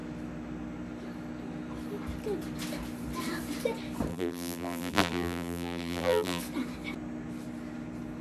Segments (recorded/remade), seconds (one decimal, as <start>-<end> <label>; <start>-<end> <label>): 0.0-4.1 recorded; 4.1-6.4 remade; 6.4-8.2 recorded